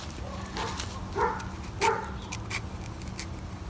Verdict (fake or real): real